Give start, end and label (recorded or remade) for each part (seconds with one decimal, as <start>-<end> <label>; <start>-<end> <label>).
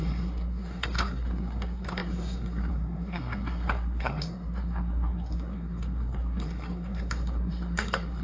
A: 0.0-8.2 remade